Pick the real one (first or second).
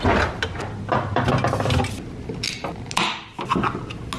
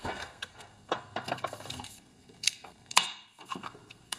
first